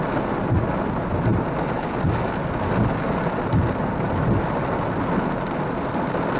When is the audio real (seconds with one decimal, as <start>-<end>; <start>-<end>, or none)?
0.0-6.4

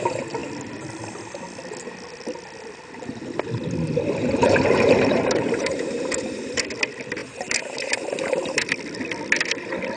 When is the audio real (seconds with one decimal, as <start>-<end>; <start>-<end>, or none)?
0.0-4.4; 6.7-7.2; 8.7-10.0

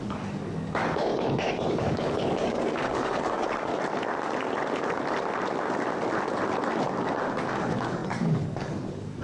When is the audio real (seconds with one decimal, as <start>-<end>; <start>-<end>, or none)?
3.7-7.2

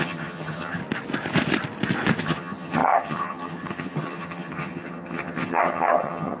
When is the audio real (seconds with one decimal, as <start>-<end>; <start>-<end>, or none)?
0.8-2.2

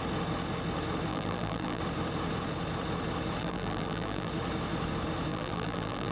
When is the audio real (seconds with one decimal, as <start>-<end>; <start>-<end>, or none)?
0.0-1.1; 1.8-3.4; 4.3-5.3